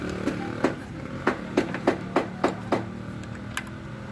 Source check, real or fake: real